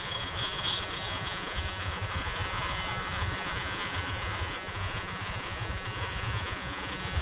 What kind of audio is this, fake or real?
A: fake